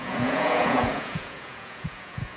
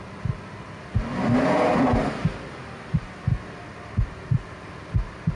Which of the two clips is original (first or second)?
second